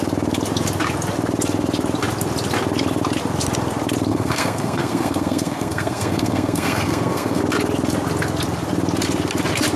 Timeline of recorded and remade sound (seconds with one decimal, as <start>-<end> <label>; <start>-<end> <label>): 0.0-4.1 recorded; 4.1-7.4 remade; 7.4-9.8 recorded